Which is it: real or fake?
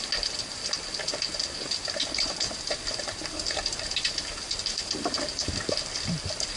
real